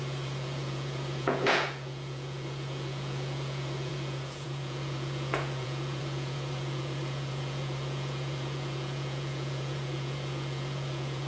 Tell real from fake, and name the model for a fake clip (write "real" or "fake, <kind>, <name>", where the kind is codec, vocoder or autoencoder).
fake, vocoder, Vocos